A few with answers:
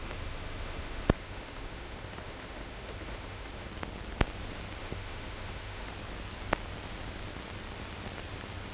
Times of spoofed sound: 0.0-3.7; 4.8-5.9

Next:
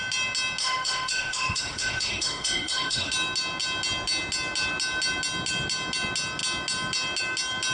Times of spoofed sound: 0.6-3.1

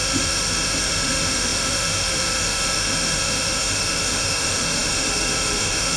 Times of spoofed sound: 0.0-6.0

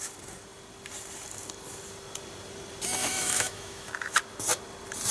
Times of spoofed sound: 3.0-4.2

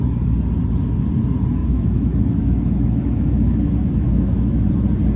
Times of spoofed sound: 1.6-4.7

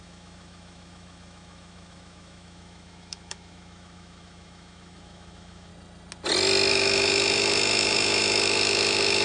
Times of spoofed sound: 0.0-5.7; 6.7-9.2